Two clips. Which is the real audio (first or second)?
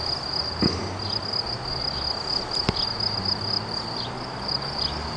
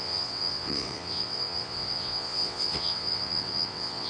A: first